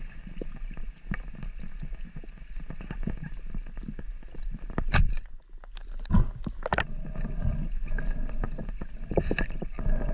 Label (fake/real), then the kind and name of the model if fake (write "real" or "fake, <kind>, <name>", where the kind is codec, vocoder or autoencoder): real